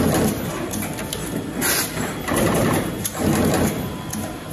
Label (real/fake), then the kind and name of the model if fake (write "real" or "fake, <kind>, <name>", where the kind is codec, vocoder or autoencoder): real